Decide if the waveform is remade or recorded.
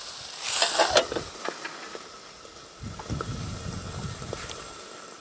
recorded